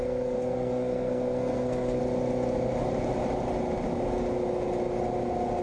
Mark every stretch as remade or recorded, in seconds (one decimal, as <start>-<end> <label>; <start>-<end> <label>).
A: 0.0-2.0 remade; 2.0-5.6 recorded